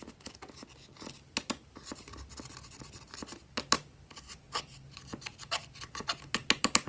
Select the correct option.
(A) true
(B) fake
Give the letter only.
A